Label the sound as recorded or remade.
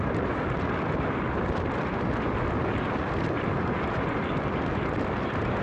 recorded